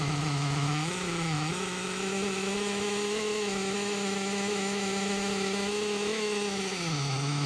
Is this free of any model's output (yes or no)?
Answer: no